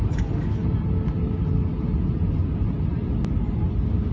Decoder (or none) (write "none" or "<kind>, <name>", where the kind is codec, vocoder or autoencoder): none